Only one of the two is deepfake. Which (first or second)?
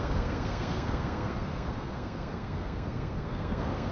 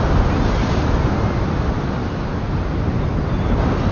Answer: first